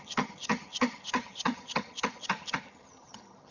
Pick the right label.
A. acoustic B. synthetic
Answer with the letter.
B